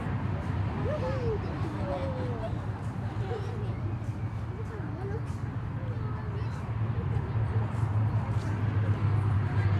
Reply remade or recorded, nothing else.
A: recorded